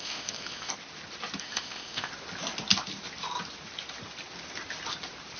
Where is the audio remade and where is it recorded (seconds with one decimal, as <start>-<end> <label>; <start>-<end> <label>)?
0.0-0.7 remade; 0.7-1.4 recorded; 1.4-2.1 remade; 2.1-5.4 recorded